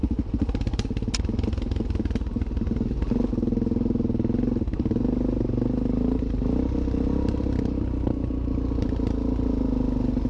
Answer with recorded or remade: recorded